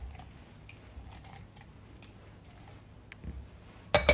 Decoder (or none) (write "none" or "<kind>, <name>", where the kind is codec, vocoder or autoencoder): none